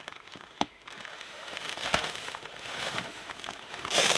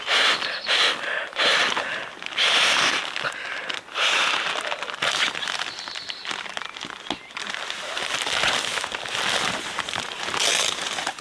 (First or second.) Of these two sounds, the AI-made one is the first